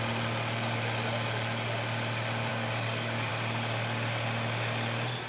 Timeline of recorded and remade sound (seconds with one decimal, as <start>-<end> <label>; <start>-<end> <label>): 0.0-2.5 recorded; 2.5-3.3 remade; 3.3-5.3 recorded